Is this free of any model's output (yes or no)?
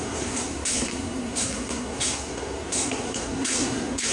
no